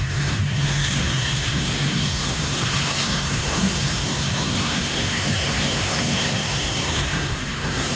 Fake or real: fake